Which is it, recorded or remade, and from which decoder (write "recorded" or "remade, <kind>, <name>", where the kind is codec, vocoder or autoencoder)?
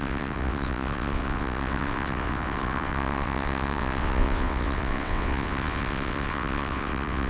remade, vocoder, WaveNeXt